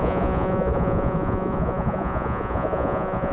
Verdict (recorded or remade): remade